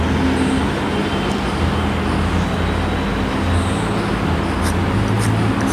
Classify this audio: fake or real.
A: real